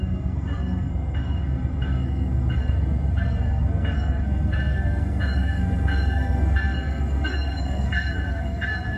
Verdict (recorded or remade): remade